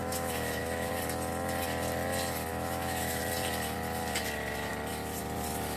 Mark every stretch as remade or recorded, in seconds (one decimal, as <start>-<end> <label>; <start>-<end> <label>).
0.0-0.9 remade; 0.9-2.5 recorded; 2.5-3.2 remade; 3.2-5.8 recorded